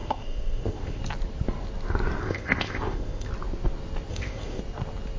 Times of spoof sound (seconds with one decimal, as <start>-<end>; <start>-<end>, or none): 0.0-1.0; 2.2-3.3; 4.1-4.6